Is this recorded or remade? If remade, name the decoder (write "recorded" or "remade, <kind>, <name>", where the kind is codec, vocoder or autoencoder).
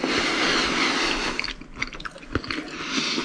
recorded